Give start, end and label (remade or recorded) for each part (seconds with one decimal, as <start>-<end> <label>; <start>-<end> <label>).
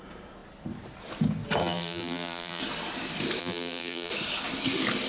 0.0-1.6 recorded; 1.6-2.6 remade; 2.6-3.4 recorded; 3.4-4.1 remade; 4.1-5.1 recorded